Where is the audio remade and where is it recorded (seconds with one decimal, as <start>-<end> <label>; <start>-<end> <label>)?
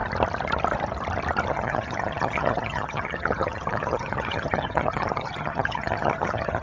0.0-1.5 recorded; 1.5-6.6 remade